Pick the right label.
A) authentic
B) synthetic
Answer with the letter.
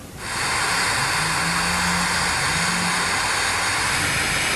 A